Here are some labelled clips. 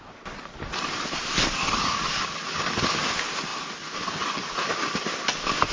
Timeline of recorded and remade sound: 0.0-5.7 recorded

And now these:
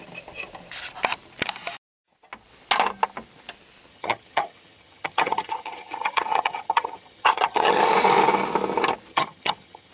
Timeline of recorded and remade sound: 0.0-3.9 recorded; 3.9-7.8 remade; 7.8-9.1 recorded; 9.1-9.9 remade

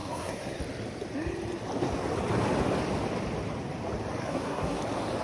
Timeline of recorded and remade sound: 0.0-0.6 remade; 0.6-4.2 recorded; 4.2-4.8 remade; 4.8-5.2 recorded

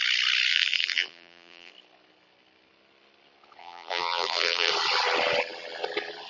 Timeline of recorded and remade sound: 0.0-0.5 recorded; 0.5-1.7 remade; 1.7-3.6 recorded; 3.6-4.7 remade; 4.7-6.3 recorded

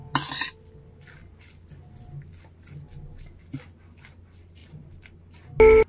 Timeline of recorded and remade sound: 0.0-5.9 recorded

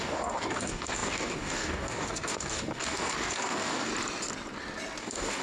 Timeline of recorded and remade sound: 0.0-3.9 remade; 3.9-5.0 recorded; 5.0-5.4 remade